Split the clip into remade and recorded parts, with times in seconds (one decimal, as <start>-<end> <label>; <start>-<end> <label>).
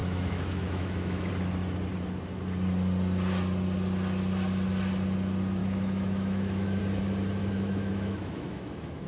0.0-1.3 remade; 1.3-5.6 recorded; 5.6-6.8 remade; 6.8-7.4 recorded; 7.4-9.1 remade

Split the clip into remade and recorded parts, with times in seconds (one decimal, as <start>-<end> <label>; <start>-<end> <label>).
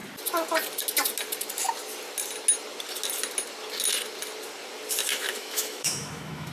0.0-5.1 recorded; 5.1-6.5 remade